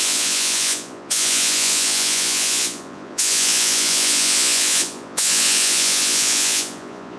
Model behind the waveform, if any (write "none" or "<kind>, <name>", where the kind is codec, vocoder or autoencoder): vocoder, Vocos